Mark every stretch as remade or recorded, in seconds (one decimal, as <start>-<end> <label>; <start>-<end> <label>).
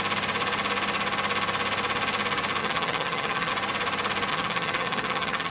0.0-2.6 recorded; 2.6-3.5 remade; 3.5-4.3 recorded; 4.3-5.5 remade